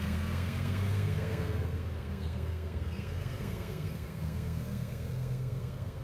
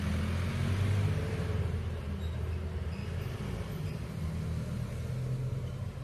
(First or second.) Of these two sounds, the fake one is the first